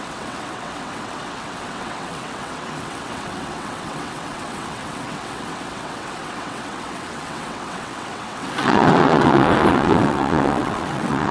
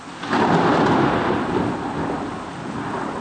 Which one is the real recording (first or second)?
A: second